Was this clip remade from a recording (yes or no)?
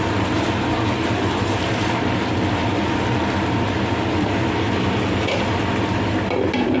no